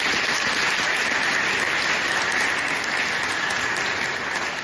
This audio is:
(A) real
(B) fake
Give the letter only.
A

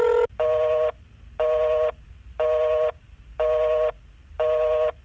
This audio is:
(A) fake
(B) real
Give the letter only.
B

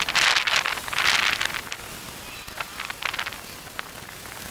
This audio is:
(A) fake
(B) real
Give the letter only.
B